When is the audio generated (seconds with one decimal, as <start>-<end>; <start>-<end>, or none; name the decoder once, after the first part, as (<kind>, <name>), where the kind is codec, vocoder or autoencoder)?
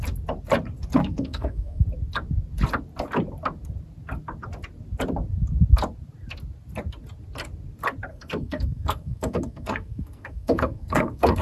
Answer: 1.0-1.8 (codec, SNAC); 8.1-11.4